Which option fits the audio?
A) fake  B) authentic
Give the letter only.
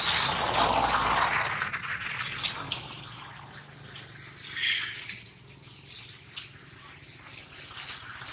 B